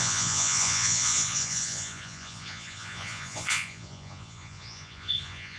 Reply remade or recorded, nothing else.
remade